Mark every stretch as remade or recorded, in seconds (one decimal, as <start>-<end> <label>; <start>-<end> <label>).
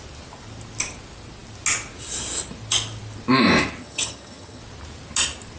0.0-3.8 recorded; 3.8-4.6 remade; 4.6-5.6 recorded